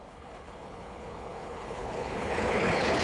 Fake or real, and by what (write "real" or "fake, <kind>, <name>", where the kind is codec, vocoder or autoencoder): fake, codec, HILCodec